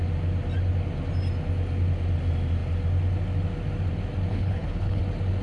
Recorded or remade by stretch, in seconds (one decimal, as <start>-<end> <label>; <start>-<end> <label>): 0.0-4.3 recorded; 4.3-5.0 remade; 5.0-5.4 recorded